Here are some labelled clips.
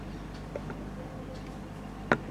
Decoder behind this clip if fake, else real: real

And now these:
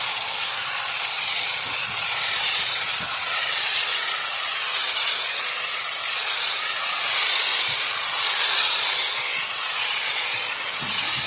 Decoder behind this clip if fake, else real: fake, vocoder, Vocos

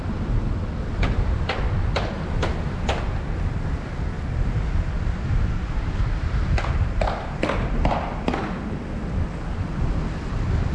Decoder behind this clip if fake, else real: real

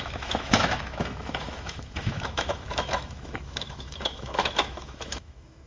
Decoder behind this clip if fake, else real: fake, autoencoder, DAC-VAE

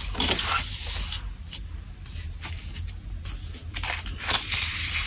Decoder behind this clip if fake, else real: real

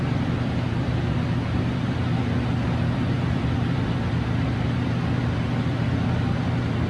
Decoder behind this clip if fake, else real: fake, vocoder, BigVGAN v2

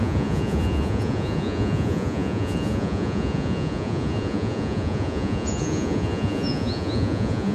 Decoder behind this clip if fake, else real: fake, vocoder, Vocos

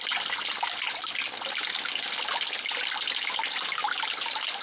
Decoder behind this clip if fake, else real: real